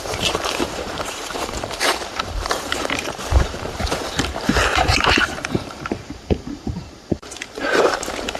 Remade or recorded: remade